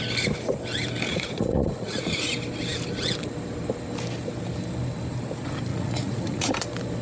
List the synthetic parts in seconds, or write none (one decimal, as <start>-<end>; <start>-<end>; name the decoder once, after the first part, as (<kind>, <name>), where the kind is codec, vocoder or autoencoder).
1.1-2.3 (vocoder, Vocos); 5.7-6.5